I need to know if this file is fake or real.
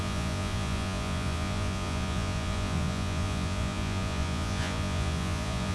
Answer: fake